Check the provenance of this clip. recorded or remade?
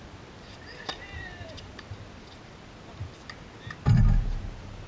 recorded